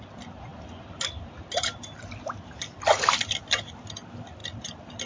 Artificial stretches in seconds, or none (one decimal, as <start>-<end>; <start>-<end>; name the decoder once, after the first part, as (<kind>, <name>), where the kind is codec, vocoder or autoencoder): none